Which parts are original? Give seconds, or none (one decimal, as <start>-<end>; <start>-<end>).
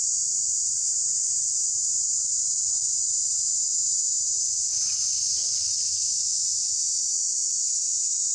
0.0-8.3